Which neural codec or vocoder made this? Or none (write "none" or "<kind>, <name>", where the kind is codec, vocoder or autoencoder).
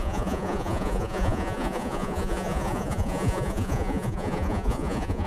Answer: vocoder, Vocos